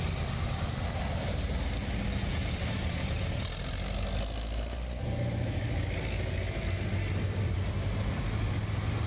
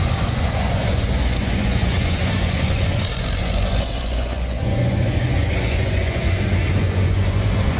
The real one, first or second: first